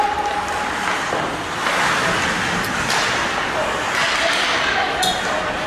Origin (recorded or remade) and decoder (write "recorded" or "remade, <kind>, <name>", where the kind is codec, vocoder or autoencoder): recorded